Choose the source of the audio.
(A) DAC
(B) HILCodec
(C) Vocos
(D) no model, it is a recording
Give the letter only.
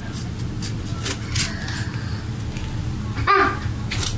D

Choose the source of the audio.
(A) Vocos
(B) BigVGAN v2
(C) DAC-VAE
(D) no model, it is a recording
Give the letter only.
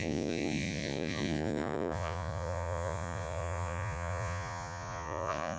A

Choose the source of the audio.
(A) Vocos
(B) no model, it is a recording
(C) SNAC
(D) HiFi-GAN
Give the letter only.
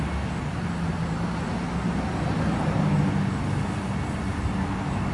B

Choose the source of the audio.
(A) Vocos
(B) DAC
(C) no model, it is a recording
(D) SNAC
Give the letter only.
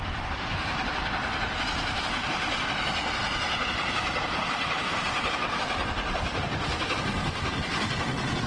C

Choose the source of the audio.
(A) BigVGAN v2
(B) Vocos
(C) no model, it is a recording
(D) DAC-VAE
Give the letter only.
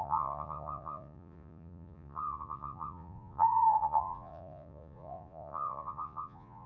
B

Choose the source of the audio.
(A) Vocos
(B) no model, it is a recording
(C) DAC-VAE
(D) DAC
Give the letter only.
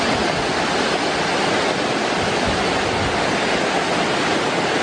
B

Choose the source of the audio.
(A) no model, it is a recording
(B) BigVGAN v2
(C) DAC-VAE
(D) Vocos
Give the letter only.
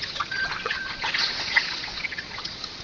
D